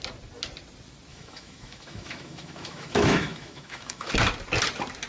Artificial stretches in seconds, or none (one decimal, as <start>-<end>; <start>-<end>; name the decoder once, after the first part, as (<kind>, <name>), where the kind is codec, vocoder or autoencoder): 1.1-4.1 (autoencoder, DAC-VAE)